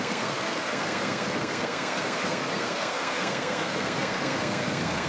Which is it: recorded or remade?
remade